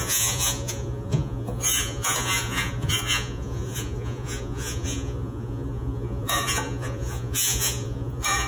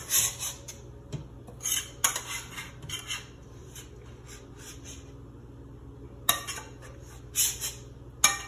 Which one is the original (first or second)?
second